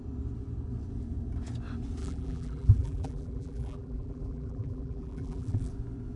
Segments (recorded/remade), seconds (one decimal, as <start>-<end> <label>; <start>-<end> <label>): 0.0-2.0 recorded; 2.0-5.7 remade; 5.7-6.2 recorded